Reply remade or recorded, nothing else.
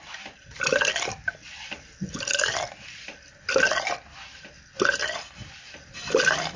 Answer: recorded